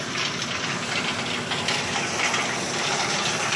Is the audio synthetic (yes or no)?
no